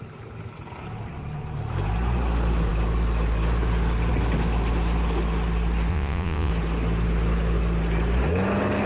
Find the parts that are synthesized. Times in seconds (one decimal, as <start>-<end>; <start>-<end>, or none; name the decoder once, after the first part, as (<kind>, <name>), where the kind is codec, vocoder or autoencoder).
5.9-6.5 (vocoder, Vocos)